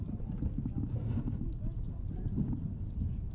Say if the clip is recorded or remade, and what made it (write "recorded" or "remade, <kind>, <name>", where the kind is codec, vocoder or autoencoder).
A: recorded